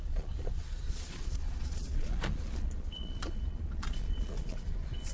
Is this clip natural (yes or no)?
no